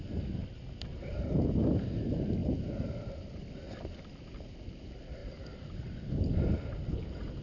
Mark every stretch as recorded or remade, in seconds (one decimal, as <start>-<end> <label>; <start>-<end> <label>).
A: 0.0-7.4 recorded